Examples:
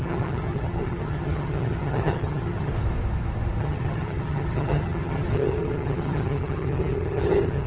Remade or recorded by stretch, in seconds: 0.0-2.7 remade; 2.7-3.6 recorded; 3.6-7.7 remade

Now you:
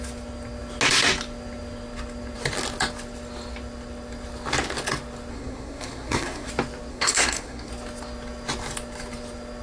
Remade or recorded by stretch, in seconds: 0.0-5.3 recorded; 5.3-6.5 remade; 6.5-6.9 recorded; 6.9-7.7 remade; 7.7-9.6 recorded

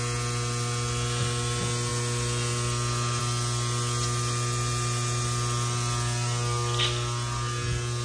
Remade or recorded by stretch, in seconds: 0.0-8.0 recorded

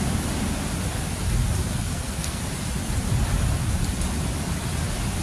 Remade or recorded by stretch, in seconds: 0.0-1.7 recorded; 1.7-2.4 remade; 2.4-5.2 recorded

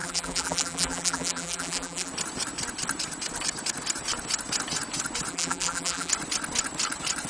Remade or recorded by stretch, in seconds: 0.0-2.1 remade; 2.1-5.3 recorded; 5.3-6.1 remade; 6.1-7.3 recorded

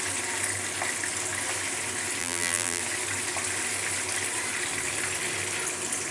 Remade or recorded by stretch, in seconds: 0.0-2.2 recorded; 2.2-2.8 remade; 2.8-6.1 recorded

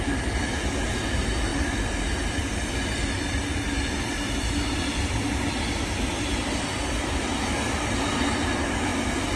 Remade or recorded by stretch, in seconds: 0.0-9.4 recorded